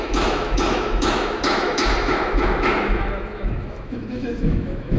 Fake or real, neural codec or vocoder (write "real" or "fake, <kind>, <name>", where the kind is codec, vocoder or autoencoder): fake, autoencoder, DAC-VAE